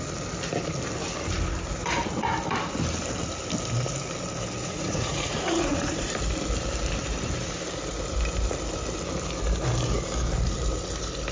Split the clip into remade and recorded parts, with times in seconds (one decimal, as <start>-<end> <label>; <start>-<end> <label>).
0.0-4.6 recorded; 4.6-6.1 remade; 6.1-11.3 recorded